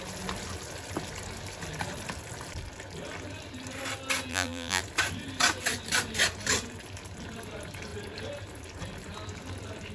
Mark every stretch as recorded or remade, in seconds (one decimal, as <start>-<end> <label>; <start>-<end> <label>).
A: 0.0-4.3 recorded; 4.3-4.8 remade; 4.8-9.9 recorded

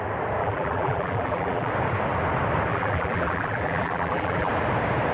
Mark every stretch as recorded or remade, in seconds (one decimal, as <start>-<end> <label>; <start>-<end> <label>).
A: 0.0-0.4 recorded; 0.4-1.7 remade; 1.7-2.7 recorded; 2.7-4.5 remade; 4.5-5.1 recorded

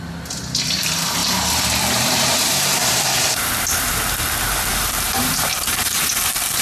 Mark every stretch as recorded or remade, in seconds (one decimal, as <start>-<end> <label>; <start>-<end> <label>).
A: 0.0-1.2 recorded; 1.2-4.0 remade; 4.0-4.7 recorded; 4.7-6.1 remade; 6.1-6.6 recorded

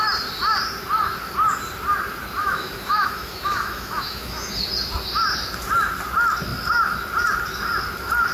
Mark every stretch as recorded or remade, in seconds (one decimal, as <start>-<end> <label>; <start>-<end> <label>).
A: 0.0-2.4 recorded; 2.4-4.5 remade; 4.5-8.3 recorded

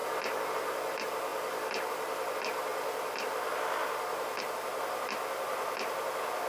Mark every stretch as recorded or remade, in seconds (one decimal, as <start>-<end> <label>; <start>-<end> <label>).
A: 0.0-6.5 recorded

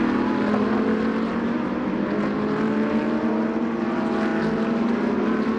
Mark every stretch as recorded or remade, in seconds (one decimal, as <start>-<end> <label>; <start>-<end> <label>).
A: 0.0-5.6 recorded